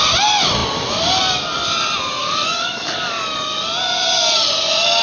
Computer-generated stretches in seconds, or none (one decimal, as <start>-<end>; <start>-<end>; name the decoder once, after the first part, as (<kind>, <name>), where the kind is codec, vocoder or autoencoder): 2.2-3.7 (codec, DAC)